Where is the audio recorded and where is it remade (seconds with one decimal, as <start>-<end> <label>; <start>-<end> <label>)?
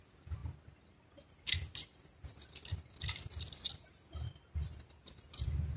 0.0-5.8 recorded